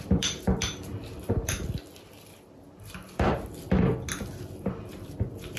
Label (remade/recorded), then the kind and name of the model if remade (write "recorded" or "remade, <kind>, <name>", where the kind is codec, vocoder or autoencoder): remade, vocoder, BigVGAN v2